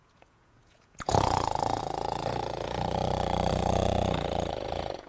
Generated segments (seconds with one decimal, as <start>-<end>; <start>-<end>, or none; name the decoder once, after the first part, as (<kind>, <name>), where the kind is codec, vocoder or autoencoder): 0.0-3.0 (vocoder, Vocos); 3.5-5.1